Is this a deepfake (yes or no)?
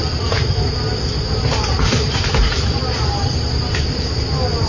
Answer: no